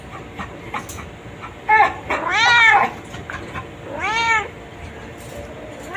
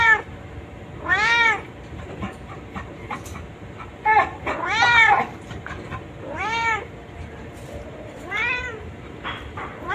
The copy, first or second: second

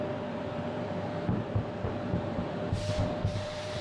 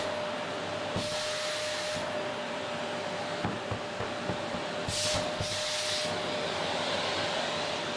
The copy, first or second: first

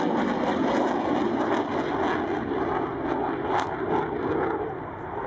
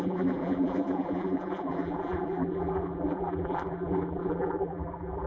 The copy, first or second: second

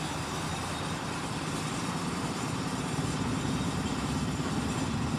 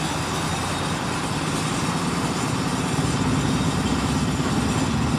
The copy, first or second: first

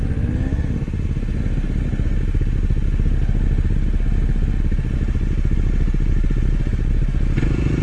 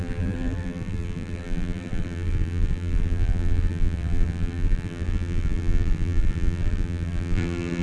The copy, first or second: second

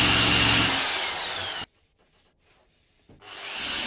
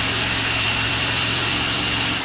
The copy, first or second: second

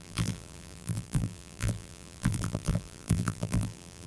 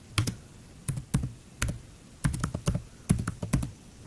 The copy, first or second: first